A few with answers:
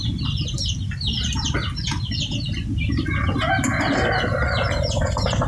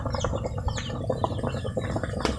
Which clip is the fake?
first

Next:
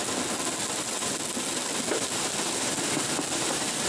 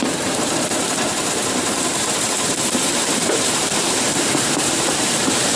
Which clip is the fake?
second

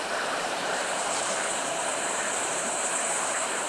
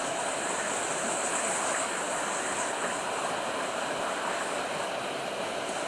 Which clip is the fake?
first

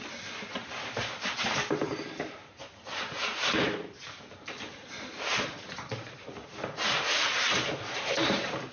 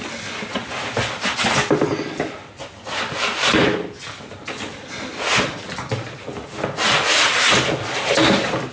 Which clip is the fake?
first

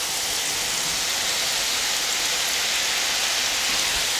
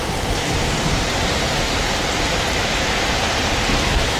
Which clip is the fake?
second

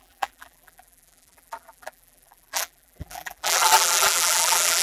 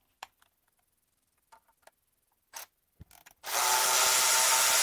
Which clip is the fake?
first